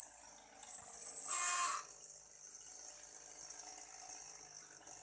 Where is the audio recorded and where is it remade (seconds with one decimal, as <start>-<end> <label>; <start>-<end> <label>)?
0.0-5.0 recorded